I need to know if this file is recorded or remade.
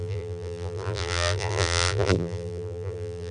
remade